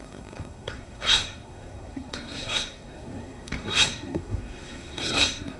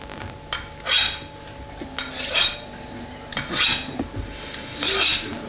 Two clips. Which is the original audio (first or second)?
second